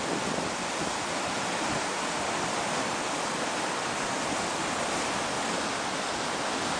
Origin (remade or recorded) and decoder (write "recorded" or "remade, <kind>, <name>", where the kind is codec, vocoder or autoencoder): recorded